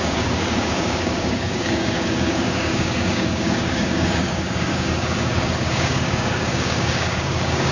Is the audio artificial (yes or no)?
yes